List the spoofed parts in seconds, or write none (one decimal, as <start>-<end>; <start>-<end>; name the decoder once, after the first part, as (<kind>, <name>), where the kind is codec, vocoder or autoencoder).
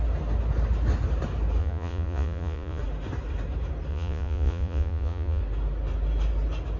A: 1.6-2.8 (vocoder, Vocos); 3.9-5.4